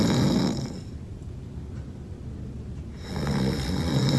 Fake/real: real